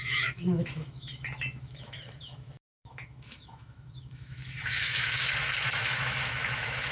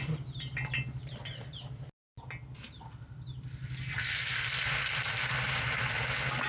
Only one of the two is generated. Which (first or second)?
first